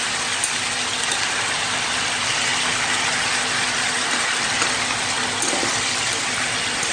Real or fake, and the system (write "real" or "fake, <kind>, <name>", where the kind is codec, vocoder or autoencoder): real